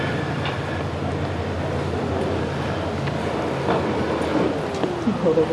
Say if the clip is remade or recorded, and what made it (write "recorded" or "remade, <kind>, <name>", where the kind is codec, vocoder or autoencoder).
recorded